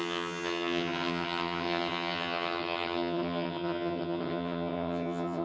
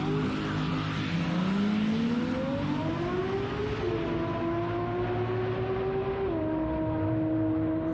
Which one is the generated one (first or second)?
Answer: first